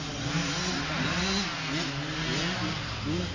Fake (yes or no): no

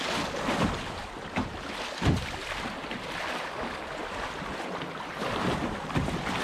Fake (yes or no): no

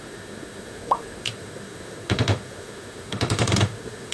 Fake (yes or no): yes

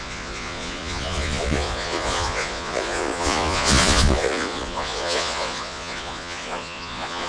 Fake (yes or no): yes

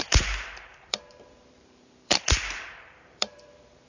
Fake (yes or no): yes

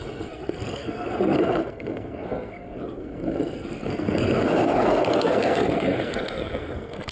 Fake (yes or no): yes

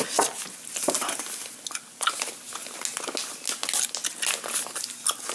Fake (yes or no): no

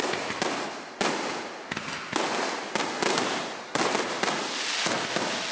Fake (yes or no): no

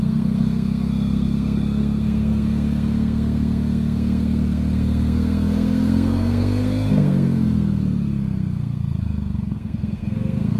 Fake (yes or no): yes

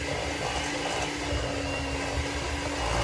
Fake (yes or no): no